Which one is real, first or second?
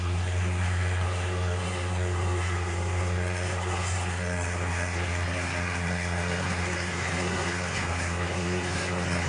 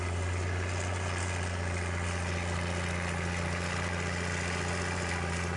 second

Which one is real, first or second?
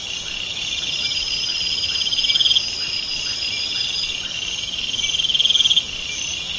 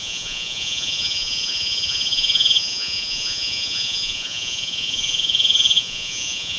first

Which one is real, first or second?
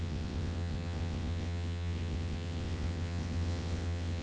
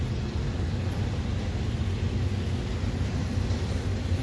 second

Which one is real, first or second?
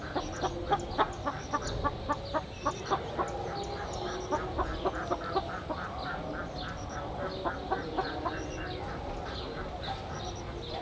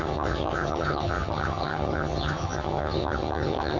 first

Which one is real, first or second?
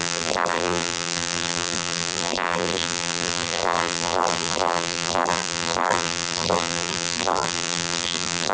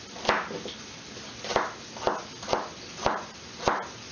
second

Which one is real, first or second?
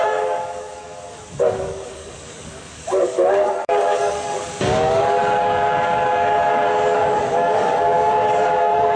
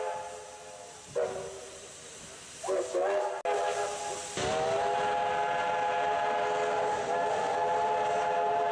second